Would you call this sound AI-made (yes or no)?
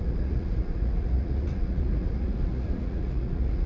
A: yes